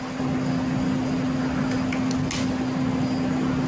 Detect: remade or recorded recorded